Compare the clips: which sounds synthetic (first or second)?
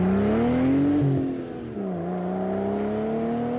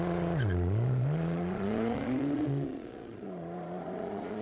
second